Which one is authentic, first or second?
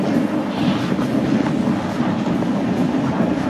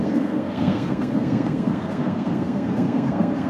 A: first